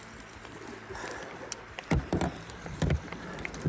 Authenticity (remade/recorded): recorded